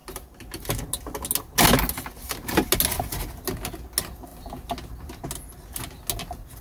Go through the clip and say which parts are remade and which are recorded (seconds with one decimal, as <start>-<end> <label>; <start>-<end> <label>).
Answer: 0.0-6.6 recorded